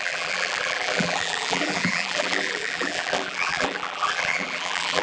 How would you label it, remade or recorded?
remade